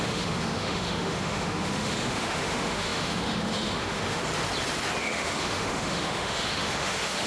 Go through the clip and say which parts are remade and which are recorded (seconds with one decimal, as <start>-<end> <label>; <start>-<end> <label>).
0.0-4.2 remade; 4.2-5.0 recorded; 5.0-7.3 remade